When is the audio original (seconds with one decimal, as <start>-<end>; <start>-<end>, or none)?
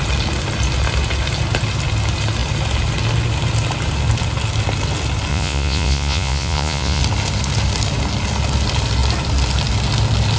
0.0-5.3; 7.0-10.4